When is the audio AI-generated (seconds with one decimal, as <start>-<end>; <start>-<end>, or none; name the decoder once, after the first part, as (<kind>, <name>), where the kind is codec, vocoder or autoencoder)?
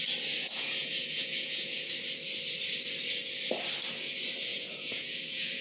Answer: 0.4-1.9 (vocoder, Vocos); 4.5-5.6